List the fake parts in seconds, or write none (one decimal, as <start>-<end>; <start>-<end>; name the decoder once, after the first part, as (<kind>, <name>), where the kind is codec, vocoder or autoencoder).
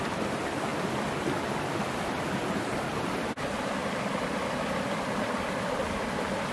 none